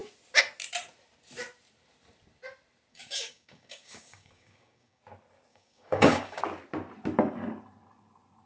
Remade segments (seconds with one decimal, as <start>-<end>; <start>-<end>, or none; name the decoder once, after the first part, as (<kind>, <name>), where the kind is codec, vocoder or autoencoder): 2.9-5.0 (codec, DAC); 5.5-6.4